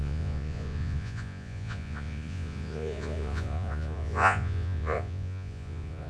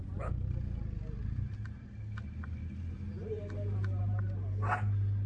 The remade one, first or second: first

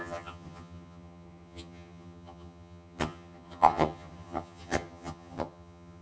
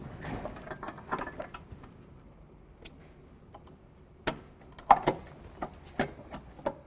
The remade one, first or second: first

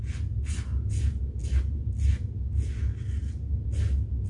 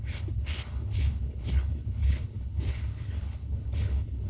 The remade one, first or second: second